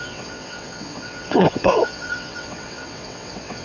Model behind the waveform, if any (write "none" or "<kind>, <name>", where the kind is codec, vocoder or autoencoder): vocoder, WaveNeXt